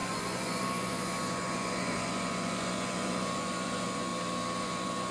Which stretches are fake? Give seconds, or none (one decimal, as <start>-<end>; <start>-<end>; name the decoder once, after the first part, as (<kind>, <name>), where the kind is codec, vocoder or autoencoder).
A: 0.0-4.1 (vocoder, Vocos); 4.6-5.1